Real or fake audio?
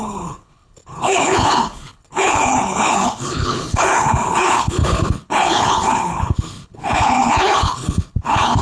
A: fake